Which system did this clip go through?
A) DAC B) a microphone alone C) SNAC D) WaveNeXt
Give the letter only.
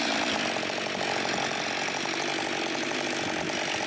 B